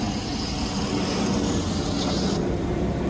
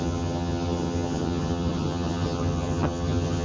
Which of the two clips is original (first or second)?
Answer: first